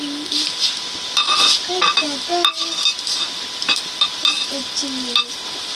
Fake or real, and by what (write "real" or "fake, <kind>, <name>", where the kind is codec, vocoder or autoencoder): real